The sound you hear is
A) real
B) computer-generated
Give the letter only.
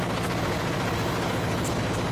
A